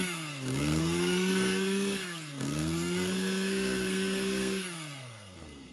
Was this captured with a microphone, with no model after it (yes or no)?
no